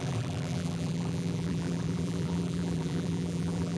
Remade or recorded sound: remade